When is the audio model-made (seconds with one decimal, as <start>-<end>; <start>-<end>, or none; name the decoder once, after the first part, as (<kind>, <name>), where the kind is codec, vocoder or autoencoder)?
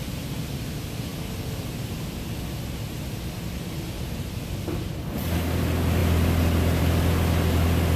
none